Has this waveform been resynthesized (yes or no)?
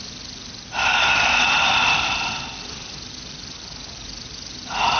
no